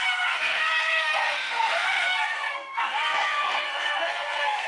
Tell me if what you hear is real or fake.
fake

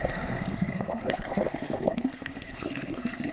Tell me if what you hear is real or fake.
fake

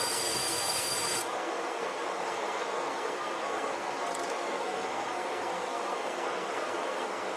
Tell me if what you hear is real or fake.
fake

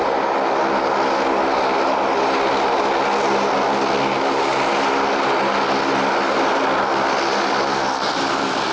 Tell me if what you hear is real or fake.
real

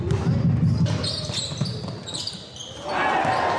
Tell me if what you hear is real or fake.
real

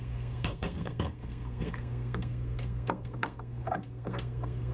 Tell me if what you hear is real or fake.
fake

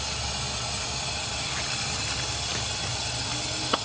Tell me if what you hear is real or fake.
real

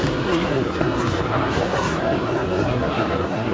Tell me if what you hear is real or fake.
fake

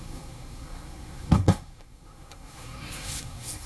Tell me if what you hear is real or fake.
fake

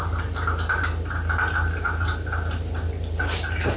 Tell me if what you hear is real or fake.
real